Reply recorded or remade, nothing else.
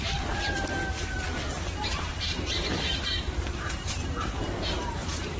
remade